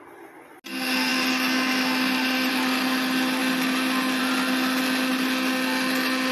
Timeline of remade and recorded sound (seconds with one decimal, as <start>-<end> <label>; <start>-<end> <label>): 0.0-6.3 recorded